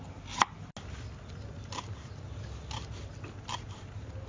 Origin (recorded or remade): recorded